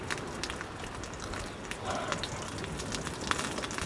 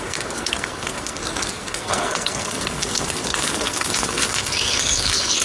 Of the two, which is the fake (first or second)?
second